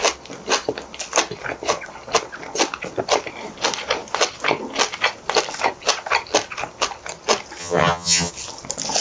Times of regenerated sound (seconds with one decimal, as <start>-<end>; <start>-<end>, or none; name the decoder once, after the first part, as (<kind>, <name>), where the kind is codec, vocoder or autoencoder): 7.6-8.3 (vocoder, HiFi-GAN)